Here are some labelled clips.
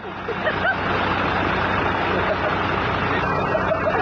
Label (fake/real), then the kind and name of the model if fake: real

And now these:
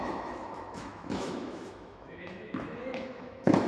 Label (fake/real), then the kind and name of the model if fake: fake, autoencoder, DAC-VAE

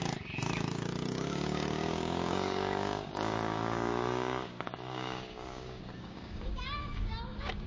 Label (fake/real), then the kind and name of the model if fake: fake, codec, DAC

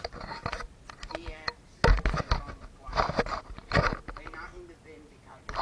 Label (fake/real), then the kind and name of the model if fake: real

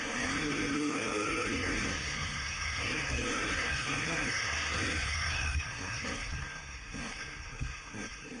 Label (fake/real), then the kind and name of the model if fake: fake, codec, SNAC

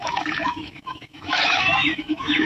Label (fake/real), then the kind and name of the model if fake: fake, autoencoder, DAC-VAE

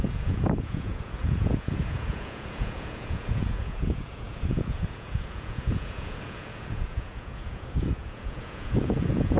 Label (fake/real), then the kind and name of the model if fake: fake, vocoder, Vocos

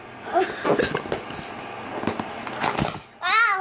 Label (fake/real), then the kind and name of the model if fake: real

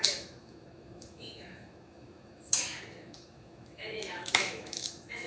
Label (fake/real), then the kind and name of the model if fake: fake, autoencoder, DAC-VAE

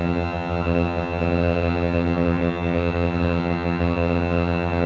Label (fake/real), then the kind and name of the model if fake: fake, vocoder, HiFi-GAN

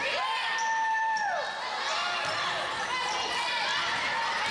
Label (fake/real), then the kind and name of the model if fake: real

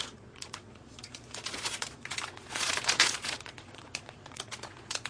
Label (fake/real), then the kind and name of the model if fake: fake, vocoder, Vocos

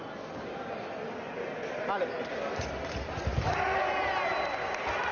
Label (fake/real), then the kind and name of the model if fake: real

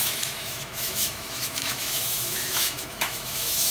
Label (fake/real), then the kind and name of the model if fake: fake, autoencoder, DAC-VAE